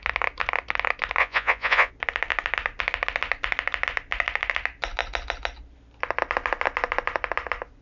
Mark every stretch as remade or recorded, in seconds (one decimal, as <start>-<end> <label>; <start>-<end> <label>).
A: 0.0-1.2 recorded; 1.2-1.9 remade; 1.9-7.8 recorded